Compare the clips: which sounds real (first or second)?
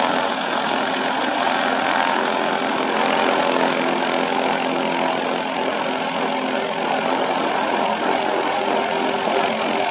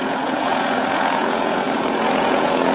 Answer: first